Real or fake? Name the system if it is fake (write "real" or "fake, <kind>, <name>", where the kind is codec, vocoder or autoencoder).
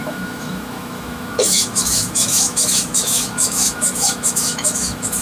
fake, autoencoder, DAC-VAE